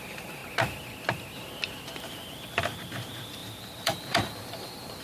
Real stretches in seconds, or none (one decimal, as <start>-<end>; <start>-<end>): 0.4-2.0